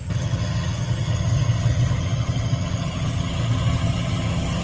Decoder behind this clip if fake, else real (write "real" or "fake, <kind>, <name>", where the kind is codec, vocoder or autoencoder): fake, vocoder, HiFi-GAN